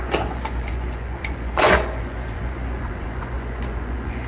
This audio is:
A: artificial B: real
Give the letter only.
A